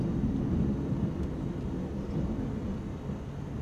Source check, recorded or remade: recorded